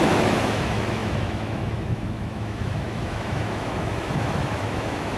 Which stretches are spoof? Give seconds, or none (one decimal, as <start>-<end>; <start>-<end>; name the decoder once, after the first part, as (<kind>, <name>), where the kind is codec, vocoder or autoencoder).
0.0-5.2 (autoencoder, DAC-VAE)